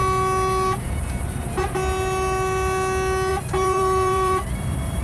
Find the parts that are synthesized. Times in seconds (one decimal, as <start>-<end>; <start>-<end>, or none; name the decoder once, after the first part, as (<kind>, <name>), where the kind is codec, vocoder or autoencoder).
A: 3.3-5.0 (vocoder, BigVGAN v2)